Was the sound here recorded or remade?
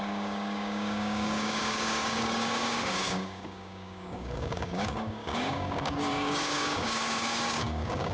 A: remade